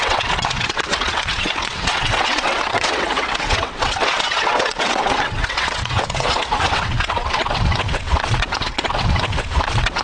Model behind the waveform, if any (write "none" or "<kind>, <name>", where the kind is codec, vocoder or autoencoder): vocoder, WaveNeXt